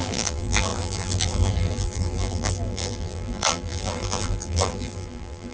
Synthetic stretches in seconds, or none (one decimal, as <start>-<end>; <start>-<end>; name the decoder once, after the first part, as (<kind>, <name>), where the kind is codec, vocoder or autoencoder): 0.0-5.5 (vocoder, BigVGAN v2)